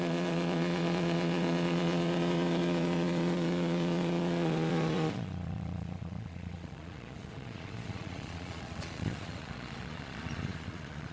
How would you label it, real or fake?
fake